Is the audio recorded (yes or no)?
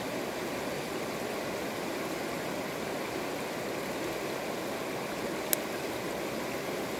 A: yes